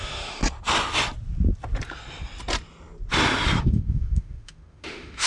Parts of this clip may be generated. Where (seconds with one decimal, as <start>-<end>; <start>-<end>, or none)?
0.0-0.4; 3.6-5.3